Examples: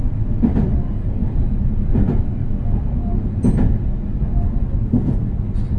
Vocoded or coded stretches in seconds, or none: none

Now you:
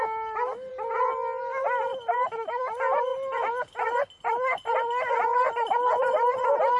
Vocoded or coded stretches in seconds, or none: none